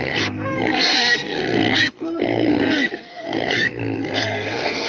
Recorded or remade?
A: remade